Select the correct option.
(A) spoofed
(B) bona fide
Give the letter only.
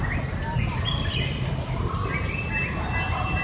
B